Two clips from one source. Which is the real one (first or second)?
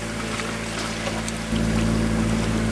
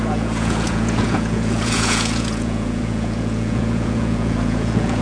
first